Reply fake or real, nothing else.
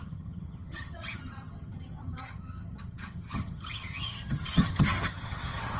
fake